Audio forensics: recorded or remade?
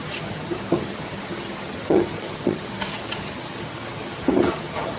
remade